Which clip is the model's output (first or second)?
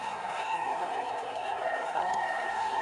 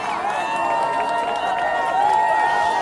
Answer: first